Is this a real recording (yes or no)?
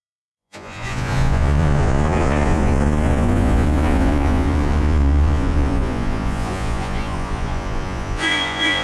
no